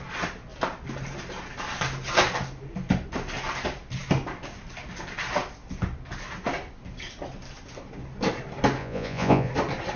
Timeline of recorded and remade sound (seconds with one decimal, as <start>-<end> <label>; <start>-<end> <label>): 0.0-8.8 recorded; 8.8-9.5 remade; 9.5-10.0 recorded

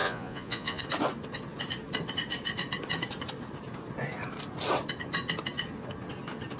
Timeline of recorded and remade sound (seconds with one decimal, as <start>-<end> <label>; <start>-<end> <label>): 0.0-0.8 remade; 0.8-6.6 recorded

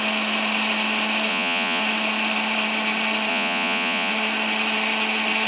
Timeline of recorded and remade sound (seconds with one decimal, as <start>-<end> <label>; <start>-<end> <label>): 0.0-1.3 recorded; 1.3-1.8 remade; 1.8-3.3 recorded; 3.3-4.1 remade; 4.1-5.5 recorded

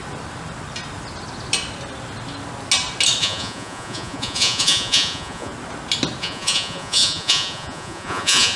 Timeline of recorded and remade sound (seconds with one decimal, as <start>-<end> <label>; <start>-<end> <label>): 0.0-3.2 recorded; 3.2-5.5 remade; 5.5-6.2 recorded; 6.2-8.6 remade

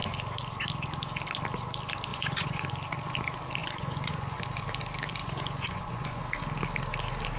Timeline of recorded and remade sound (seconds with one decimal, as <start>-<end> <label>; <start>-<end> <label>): 0.0-2.1 recorded; 2.1-2.7 remade; 2.7-3.6 recorded; 3.6-4.4 remade; 4.4-5.2 recorded; 5.2-6.2 remade; 6.2-7.4 recorded

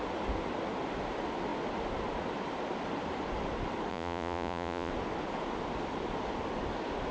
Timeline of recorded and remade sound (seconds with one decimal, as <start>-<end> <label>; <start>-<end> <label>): 0.0-3.9 recorded; 3.9-4.9 remade; 4.9-7.1 recorded